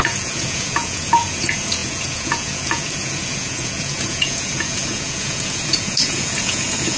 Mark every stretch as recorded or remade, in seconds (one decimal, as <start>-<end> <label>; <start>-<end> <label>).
0.0-7.0 remade